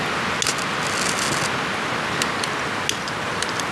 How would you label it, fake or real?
real